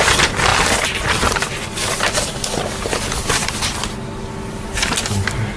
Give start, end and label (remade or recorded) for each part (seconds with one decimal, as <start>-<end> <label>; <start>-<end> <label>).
0.0-0.5 recorded; 0.5-3.9 remade; 3.9-5.6 recorded